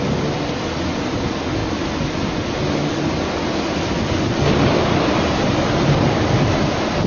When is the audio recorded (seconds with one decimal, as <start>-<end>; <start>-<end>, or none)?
0.0-7.1